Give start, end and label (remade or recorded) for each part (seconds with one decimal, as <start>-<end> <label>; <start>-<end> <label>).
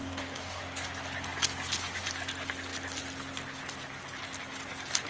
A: 0.0-0.6 remade; 0.6-5.1 recorded